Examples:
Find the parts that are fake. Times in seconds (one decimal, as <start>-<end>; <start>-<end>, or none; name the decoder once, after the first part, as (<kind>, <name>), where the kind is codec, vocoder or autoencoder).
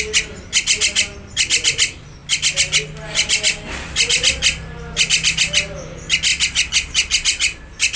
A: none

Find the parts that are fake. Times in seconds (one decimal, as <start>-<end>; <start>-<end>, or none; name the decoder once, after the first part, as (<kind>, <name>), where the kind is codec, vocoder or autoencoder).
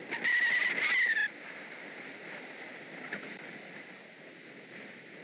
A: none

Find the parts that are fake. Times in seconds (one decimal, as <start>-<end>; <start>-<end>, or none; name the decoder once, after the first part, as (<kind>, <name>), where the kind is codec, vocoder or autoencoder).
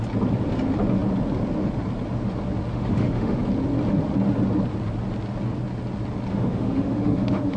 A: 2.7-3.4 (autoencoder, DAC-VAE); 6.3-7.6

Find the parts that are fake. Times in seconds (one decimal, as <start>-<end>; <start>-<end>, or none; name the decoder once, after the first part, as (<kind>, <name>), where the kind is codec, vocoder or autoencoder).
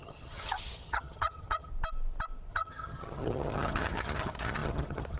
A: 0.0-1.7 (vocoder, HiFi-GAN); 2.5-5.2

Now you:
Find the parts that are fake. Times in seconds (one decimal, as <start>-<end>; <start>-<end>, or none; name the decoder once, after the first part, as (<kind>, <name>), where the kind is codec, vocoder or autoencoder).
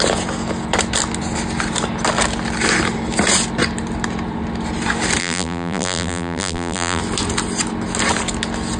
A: 5.2-7.0 (vocoder, BigVGAN v2)